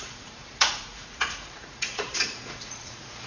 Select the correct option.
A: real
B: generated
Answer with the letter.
B